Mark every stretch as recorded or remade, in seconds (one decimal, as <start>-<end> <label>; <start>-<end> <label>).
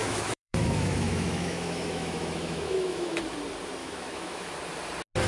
0.0-3.2 remade; 3.2-3.8 recorded; 3.8-4.5 remade; 4.5-5.3 recorded